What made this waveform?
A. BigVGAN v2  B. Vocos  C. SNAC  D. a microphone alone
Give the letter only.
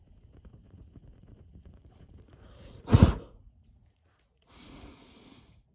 B